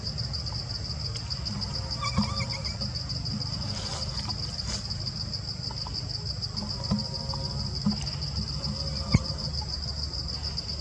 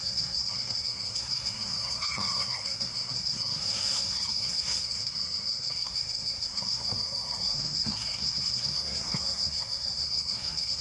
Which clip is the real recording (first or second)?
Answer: first